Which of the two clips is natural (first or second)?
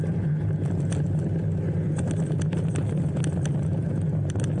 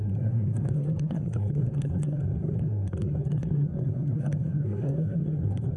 first